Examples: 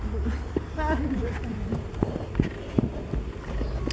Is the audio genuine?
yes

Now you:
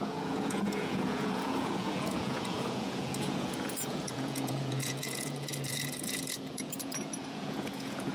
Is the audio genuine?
no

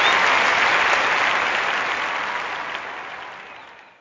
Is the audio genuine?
yes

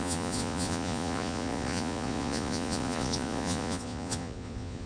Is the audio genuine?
no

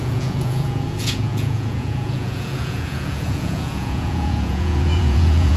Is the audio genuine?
no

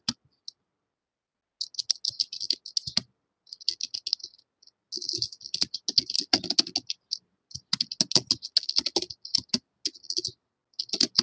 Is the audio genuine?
yes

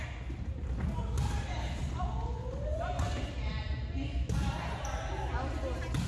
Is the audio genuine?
yes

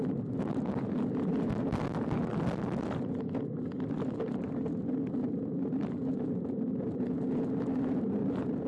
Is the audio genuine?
yes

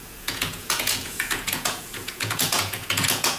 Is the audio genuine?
no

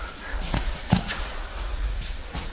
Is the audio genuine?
no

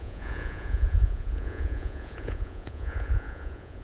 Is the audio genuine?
no